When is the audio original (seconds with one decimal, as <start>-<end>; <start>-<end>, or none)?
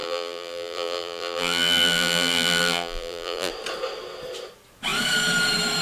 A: 3.5-5.8